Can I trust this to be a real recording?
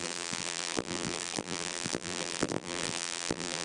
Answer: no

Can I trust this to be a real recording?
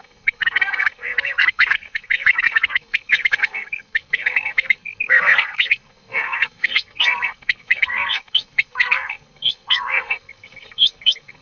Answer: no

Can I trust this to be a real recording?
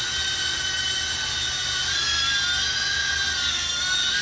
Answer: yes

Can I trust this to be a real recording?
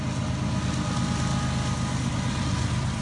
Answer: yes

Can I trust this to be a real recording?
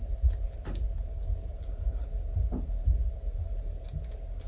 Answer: yes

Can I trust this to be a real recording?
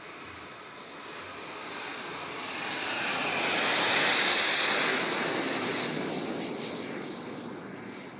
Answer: yes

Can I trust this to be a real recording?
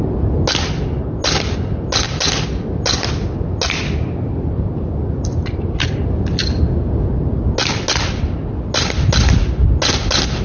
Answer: yes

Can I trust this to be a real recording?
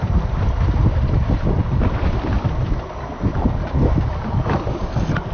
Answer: yes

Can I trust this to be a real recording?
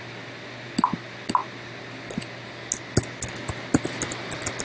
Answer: yes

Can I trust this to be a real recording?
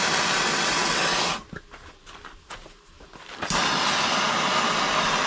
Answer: yes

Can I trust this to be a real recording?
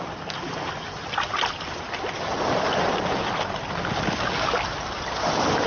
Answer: yes